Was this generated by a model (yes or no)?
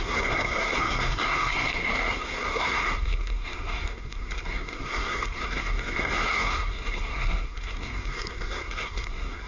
yes